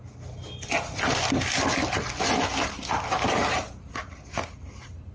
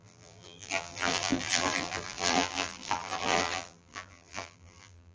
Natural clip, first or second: first